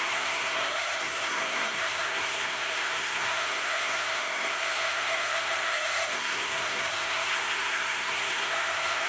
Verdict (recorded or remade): remade